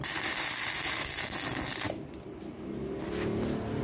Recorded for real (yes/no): yes